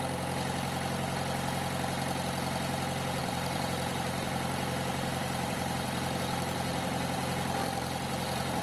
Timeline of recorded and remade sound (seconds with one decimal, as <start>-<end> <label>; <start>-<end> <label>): 0.0-3.2 recorded; 3.2-8.6 remade